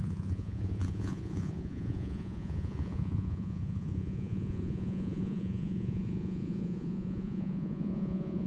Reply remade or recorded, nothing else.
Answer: remade